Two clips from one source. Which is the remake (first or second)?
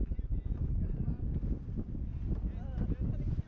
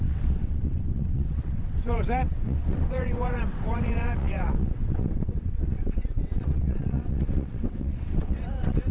second